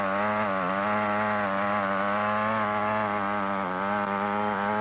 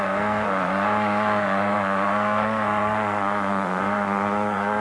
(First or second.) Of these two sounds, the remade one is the second